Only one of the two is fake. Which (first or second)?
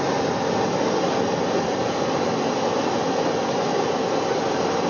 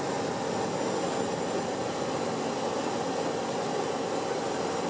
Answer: first